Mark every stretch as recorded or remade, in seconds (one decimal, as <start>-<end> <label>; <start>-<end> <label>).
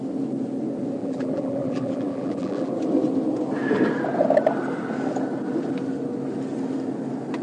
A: 0.0-1.0 recorded; 1.0-2.7 remade; 2.7-7.4 recorded